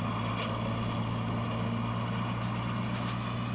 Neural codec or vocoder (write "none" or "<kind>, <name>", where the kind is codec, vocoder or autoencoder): none